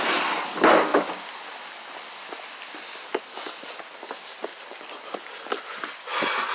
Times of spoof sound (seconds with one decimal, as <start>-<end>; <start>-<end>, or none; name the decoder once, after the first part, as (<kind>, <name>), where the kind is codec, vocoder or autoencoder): 4.5-5.8 (vocoder, BigVGAN v2)